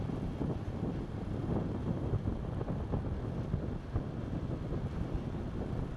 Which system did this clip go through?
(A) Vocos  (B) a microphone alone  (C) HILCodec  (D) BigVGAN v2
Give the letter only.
B